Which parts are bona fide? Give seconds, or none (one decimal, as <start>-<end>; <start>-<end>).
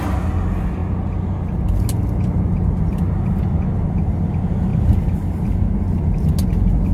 0.0-6.9